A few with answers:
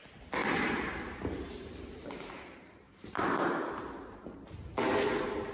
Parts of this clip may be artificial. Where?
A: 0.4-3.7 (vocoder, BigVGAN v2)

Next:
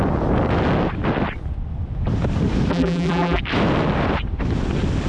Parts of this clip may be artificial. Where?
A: 2.7-3.4 (vocoder, BigVGAN v2)

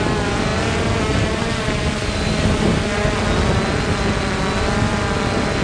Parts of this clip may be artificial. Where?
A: none

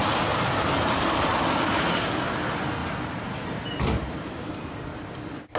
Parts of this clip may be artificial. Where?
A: 0.0-1.3 (vocoder, BigVGAN v2); 2.8-4.8

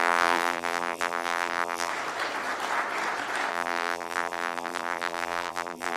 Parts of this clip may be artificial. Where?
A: 0.0-1.9 (vocoder, BigVGAN v2); 3.5-6.0

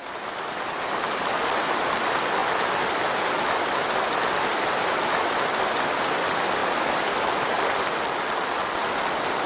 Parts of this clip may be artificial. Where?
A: 6.6-7.1 (vocoder, BigVGAN v2)